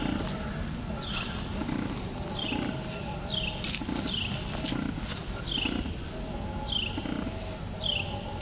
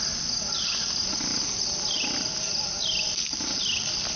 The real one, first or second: first